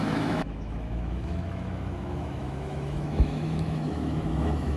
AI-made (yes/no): yes